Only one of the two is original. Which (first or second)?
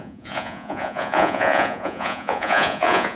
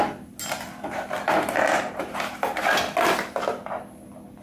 second